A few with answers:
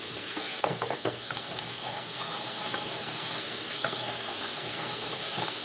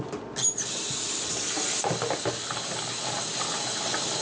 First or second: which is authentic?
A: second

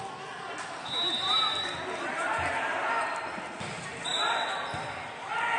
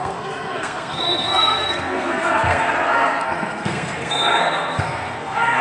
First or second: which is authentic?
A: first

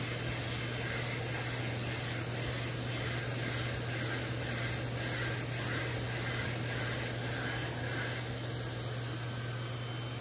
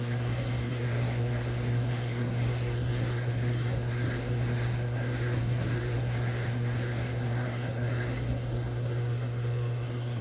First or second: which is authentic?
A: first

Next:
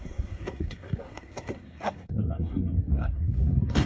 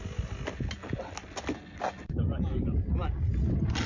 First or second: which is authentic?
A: second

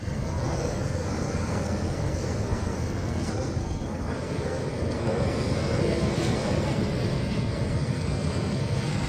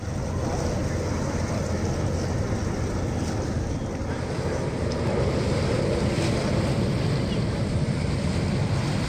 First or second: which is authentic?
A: second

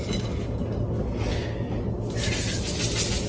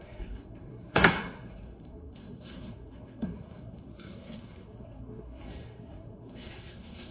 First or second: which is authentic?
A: first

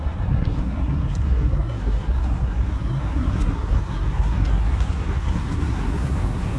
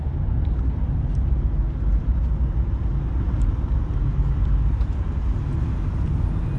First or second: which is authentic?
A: second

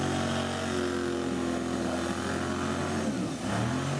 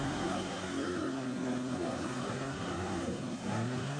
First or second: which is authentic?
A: first